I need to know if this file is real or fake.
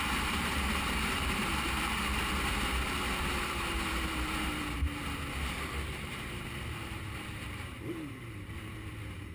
fake